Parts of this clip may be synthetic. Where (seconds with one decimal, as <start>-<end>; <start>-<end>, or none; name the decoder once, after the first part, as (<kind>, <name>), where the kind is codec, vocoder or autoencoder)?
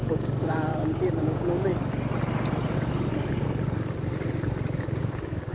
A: 0.0-0.7 (codec, DAC); 1.2-1.7; 5.0-5.5